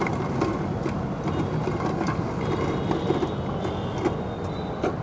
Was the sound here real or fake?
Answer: real